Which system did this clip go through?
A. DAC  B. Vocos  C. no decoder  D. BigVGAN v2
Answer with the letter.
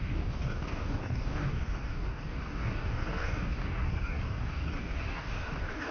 A